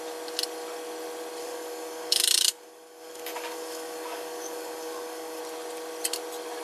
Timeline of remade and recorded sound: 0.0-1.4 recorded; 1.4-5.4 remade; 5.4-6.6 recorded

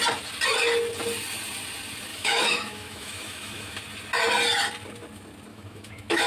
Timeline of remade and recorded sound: 0.0-2.1 recorded; 2.1-3.8 remade; 3.8-5.5 recorded; 5.5-6.3 remade

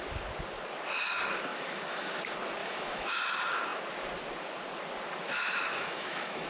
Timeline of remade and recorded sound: 0.0-1.5 recorded; 1.5-2.1 remade; 2.1-2.6 recorded; 2.6-3.2 remade; 3.2-5.7 recorded; 5.7-6.5 remade

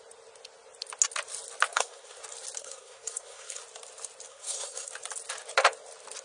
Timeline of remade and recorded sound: 0.0-1.7 recorded; 1.7-2.2 remade; 2.2-2.6 recorded; 2.6-3.6 remade; 3.6-4.3 recorded; 4.3-4.9 remade; 4.9-6.2 recorded

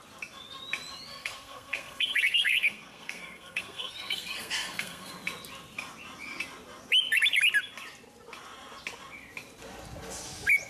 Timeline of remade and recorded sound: 0.0-1.1 recorded; 1.1-5.1 remade; 5.1-10.7 recorded

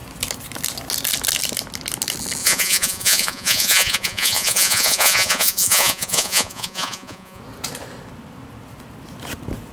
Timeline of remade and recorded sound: 0.0-2.4 recorded; 2.4-7.4 remade; 7.4-9.7 recorded

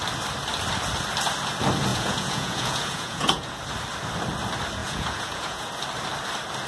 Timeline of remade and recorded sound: 0.0-1.9 recorded; 1.9-3.6 remade; 3.6-4.8 recorded; 4.8-5.7 remade; 5.7-6.7 recorded

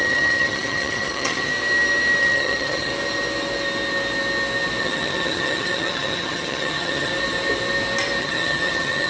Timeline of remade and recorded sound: 0.0-1.5 remade; 1.5-2.2 recorded; 2.2-2.9 remade; 2.9-4.8 recorded; 4.8-7.1 remade; 7.1-8.2 recorded; 8.2-9.1 remade